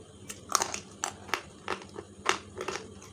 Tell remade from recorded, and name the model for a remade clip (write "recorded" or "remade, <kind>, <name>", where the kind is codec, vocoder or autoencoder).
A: recorded